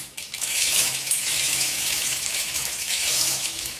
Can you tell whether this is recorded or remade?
remade